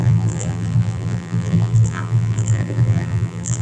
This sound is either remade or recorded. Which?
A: remade